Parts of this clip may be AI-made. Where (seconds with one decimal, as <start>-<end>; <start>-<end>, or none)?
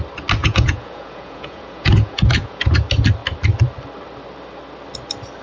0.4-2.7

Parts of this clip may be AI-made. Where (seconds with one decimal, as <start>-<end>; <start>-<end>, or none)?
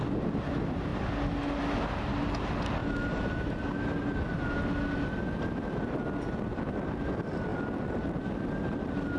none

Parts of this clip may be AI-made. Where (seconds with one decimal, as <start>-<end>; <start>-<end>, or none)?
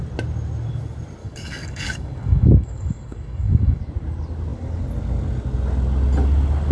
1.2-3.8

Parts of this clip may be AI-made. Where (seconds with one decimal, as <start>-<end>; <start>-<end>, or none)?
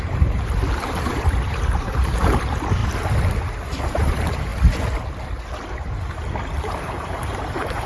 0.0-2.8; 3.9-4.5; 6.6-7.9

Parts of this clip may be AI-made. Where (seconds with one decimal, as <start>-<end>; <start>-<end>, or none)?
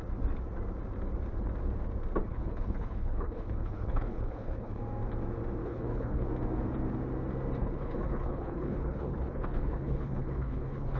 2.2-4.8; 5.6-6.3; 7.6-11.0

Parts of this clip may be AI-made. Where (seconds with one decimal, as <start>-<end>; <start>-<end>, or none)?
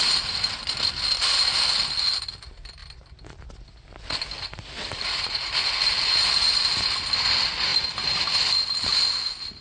none